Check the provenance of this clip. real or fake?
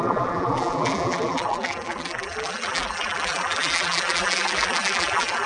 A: fake